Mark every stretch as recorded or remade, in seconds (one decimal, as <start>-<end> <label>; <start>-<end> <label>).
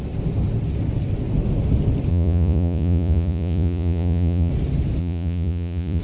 0.0-2.1 recorded; 2.1-4.5 remade; 4.5-5.0 recorded; 5.0-6.0 remade